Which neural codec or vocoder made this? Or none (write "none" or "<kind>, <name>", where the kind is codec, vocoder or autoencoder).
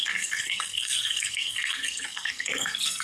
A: codec, SNAC